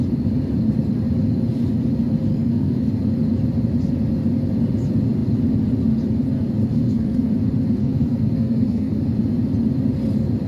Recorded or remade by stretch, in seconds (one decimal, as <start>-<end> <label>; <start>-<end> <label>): 0.0-2.3 recorded; 2.3-2.9 remade; 2.9-6.7 recorded; 6.7-7.3 remade; 7.3-7.8 recorded; 7.8-9.0 remade; 9.0-10.5 recorded